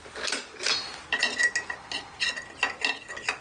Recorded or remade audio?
recorded